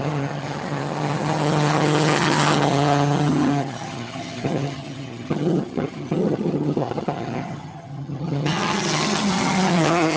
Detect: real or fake fake